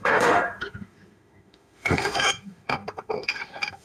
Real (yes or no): no